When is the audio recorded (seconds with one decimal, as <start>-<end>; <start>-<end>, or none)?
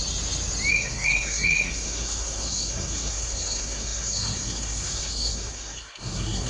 0.0-0.7